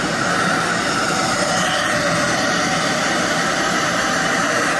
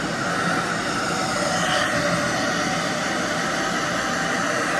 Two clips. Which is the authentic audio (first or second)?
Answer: second